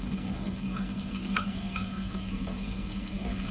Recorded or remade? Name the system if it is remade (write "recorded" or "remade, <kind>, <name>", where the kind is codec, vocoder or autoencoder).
remade, codec, SNAC